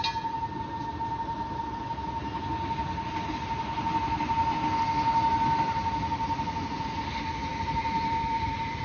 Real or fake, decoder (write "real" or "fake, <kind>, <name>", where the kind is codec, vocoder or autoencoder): real